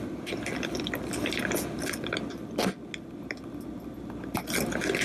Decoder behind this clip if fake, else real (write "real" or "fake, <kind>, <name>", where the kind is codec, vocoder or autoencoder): real